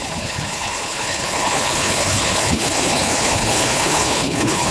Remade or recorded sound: remade